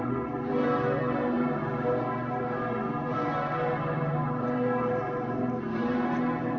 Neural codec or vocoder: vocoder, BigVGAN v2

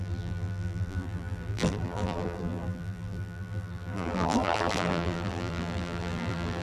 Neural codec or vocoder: vocoder, BigVGAN v2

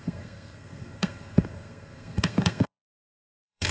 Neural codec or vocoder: codec, SNAC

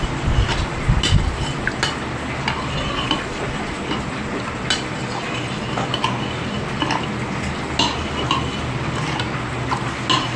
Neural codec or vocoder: none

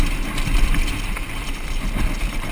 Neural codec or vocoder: none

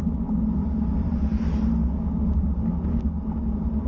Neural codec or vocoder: none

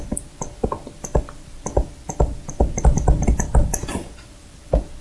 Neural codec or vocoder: none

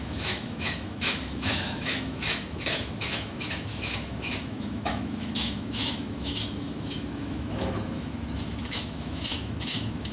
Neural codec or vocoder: autoencoder, DAC-VAE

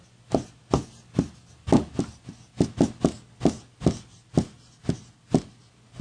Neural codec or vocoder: none